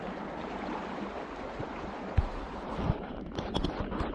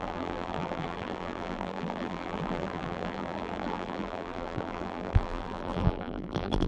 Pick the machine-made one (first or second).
second